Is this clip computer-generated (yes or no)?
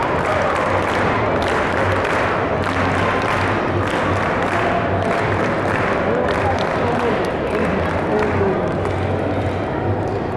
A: no